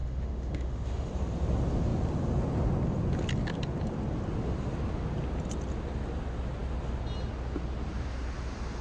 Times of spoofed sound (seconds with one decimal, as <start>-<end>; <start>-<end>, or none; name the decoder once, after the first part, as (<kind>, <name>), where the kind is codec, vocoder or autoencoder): 0.0-1.1 (autoencoder, DAC-VAE)

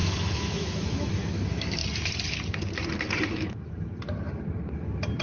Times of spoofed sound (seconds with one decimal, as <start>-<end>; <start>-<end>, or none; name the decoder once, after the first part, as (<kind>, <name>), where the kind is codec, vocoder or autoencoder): 0.0-1.8 (autoencoder, DAC-VAE); 3.3-3.9

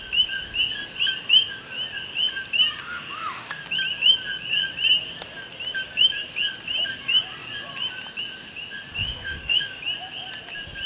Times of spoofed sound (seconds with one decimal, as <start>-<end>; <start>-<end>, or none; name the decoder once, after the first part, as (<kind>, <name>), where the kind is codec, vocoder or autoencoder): 2.8-3.6 (autoencoder, DAC-VAE); 9.0-9.8

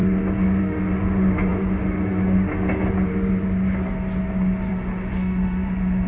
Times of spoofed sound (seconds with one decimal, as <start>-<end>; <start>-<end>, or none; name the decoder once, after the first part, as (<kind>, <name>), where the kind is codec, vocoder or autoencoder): 0.6-2.5 (autoencoder, DAC-VAE); 4.7-6.1

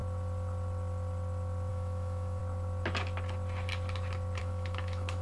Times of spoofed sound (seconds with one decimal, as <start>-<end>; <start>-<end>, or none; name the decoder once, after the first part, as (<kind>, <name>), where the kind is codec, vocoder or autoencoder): 1.7-2.4 (autoencoder, DAC-VAE); 4.4-5.2